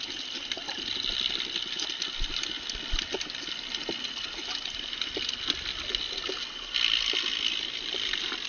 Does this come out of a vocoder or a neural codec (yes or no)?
no